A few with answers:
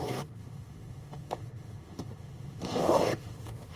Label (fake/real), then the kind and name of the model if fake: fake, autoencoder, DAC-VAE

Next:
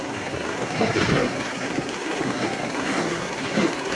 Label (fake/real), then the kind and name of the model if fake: fake, codec, SNAC